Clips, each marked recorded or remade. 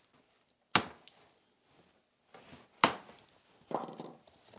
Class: recorded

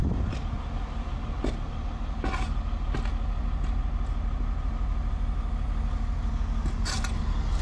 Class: recorded